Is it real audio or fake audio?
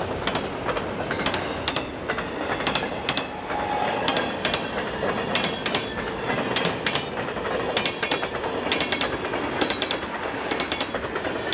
real